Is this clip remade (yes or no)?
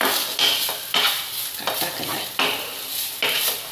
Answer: no